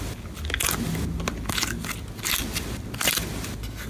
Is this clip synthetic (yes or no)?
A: no